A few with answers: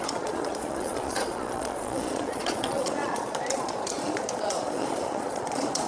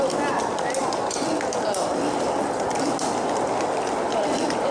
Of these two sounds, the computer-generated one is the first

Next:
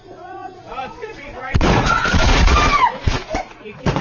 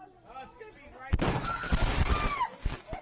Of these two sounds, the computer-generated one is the first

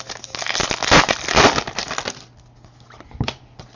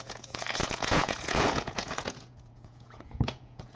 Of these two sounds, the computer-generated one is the second